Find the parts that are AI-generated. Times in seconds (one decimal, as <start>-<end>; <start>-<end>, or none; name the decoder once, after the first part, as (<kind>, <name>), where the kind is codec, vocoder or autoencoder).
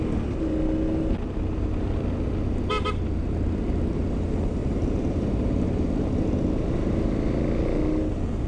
4.6-6.2 (vocoder, BigVGAN v2)